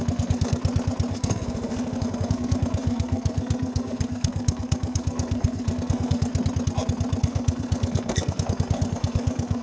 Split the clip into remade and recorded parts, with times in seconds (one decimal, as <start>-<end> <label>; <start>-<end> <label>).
0.0-0.6 remade; 0.6-1.1 recorded; 1.1-6.3 remade; 6.3-7.2 recorded; 7.2-9.6 remade